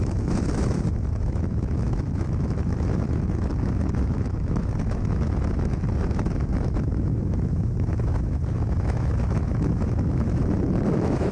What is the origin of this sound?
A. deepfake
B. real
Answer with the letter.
A